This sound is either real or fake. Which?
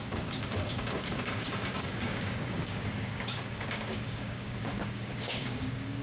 fake